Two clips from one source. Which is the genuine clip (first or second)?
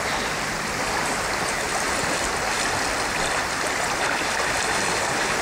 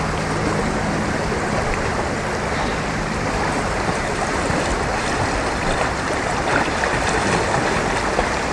first